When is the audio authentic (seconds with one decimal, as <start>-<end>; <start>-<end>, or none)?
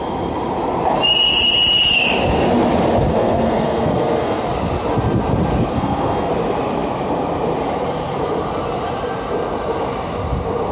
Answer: 0.0-3.1; 4.4-5.7; 6.3-10.7